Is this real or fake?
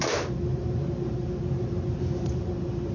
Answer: fake